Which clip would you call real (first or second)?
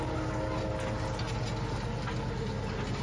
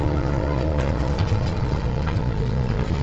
first